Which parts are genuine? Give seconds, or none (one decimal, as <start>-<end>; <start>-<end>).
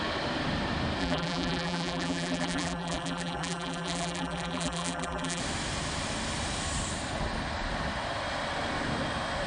0.0-1.0; 5.4-9.5